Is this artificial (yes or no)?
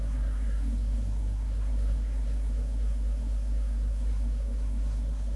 yes